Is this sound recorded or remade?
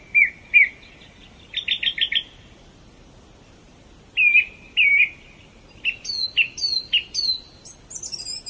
recorded